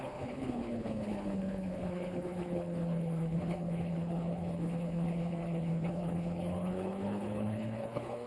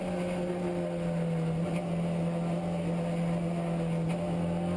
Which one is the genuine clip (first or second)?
second